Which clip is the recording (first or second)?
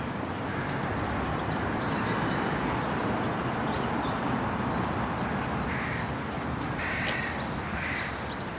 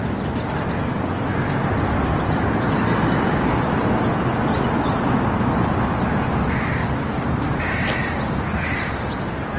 second